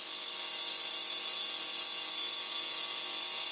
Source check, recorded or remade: recorded